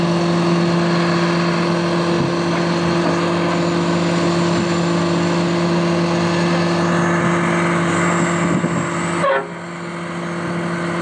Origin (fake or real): real